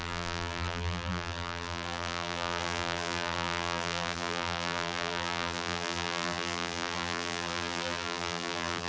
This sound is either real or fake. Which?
fake